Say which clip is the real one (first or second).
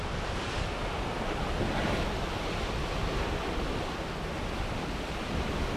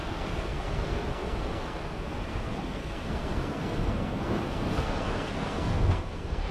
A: first